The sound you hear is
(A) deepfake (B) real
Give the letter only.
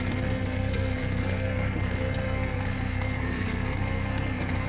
A